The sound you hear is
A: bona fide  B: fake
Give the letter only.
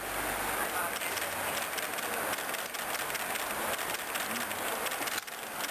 A